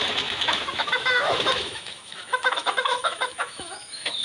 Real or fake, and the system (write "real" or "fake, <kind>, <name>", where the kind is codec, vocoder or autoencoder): fake, autoencoder, DAC-VAE